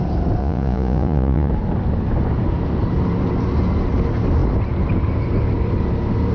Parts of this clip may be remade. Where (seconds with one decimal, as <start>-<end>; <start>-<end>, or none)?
0.4-1.5